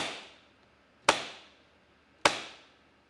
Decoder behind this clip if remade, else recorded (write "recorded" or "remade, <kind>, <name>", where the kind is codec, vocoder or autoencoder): recorded